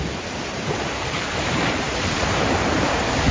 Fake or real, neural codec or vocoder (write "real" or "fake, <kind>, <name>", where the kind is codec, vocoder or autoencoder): fake, vocoder, BigVGAN v2